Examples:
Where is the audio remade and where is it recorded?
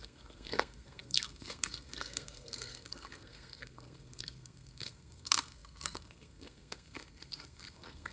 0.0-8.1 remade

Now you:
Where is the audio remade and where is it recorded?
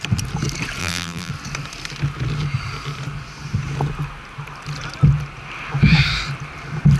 0.0-0.8 recorded; 0.8-1.3 remade; 1.3-7.0 recorded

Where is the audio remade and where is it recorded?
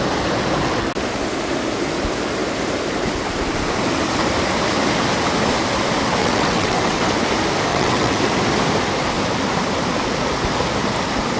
0.0-6.2 recorded; 6.2-7.1 remade; 7.1-7.7 recorded; 7.7-8.2 remade; 8.2-11.4 recorded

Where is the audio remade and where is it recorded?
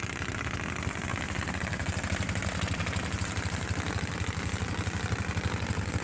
0.0-1.1 recorded; 1.1-2.0 remade; 2.0-6.0 recorded